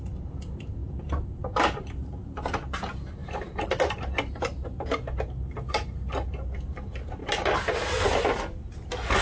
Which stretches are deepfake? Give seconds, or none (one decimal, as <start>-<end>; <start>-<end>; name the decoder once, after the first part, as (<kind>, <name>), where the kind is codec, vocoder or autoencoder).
0.8-2.3 (vocoder, BigVGAN v2); 3.2-5.7; 7.2-7.8